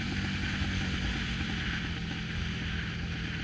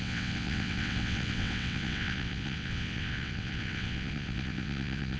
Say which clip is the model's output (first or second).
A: second